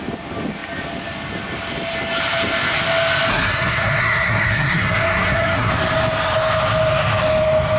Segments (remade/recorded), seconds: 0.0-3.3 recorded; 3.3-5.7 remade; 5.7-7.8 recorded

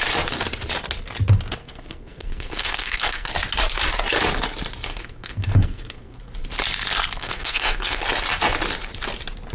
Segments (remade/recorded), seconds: 0.0-1.6 recorded; 1.6-3.3 remade; 3.3-4.9 recorded; 4.9-6.2 remade; 6.2-7.2 recorded; 7.2-8.0 remade; 8.0-9.5 recorded

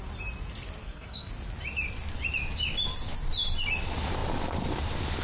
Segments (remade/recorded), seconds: 0.0-0.8 recorded; 0.8-1.3 remade; 1.3-5.2 recorded

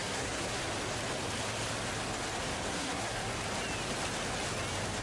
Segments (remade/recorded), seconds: 0.0-0.6 remade; 0.6-2.7 recorded; 2.7-3.2 remade; 3.2-5.0 recorded

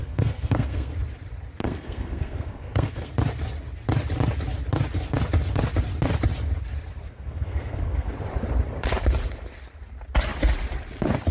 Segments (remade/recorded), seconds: 0.0-0.9 remade; 0.9-1.6 recorded; 1.6-3.1 remade; 3.1-7.1 recorded; 7.1-8.1 remade; 8.1-11.3 recorded

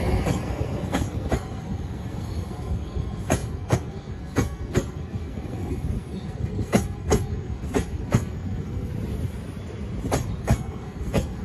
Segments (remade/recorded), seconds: 0.0-8.9 remade; 8.9-10.4 recorded; 10.4-11.4 remade

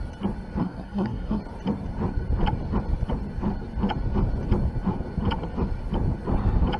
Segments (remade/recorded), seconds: 0.0-0.6 recorded; 0.6-1.4 remade; 1.4-6.8 recorded

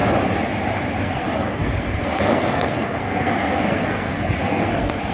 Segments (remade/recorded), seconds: 0.0-1.0 recorded; 1.0-5.1 remade